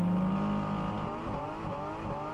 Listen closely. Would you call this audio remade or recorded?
recorded